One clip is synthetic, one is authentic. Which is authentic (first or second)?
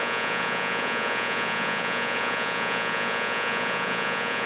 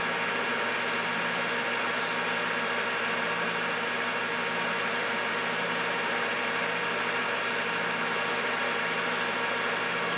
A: second